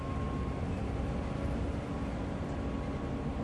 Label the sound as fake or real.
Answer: real